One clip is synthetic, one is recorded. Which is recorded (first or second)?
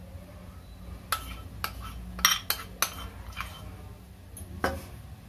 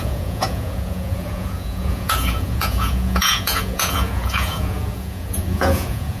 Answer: first